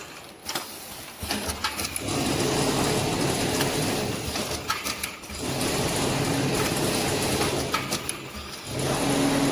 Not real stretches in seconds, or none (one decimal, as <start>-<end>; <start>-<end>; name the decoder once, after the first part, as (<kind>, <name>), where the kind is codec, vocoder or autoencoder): 3.1-6.7 (vocoder, BigVGAN v2)